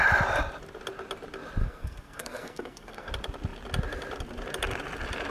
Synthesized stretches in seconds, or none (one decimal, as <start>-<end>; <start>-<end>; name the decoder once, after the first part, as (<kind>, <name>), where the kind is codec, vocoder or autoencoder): 1.6-3.1 (codec, SNAC)